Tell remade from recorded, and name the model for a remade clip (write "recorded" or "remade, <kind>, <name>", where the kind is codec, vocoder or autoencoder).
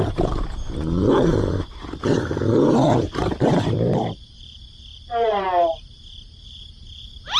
remade, vocoder, BigVGAN v2